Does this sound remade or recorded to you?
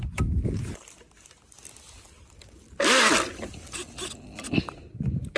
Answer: recorded